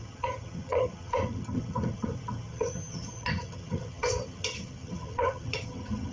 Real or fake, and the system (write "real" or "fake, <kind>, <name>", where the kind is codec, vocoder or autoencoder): fake, vocoder, HiFi-GAN